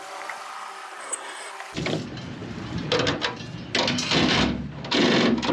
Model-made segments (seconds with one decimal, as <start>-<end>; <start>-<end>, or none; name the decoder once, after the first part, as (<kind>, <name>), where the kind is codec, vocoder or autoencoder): 1.0-1.5 (codec, SNAC)